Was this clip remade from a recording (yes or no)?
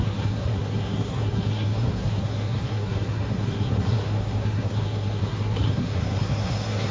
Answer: yes